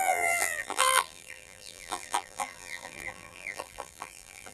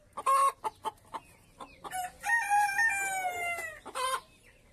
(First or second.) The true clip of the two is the second